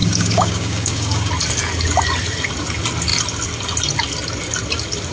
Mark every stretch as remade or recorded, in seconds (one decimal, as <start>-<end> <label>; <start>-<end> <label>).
0.0-1.3 remade; 1.3-5.1 recorded